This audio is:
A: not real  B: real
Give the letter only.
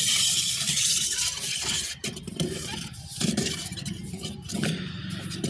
A